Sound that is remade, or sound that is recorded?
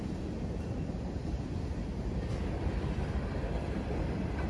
recorded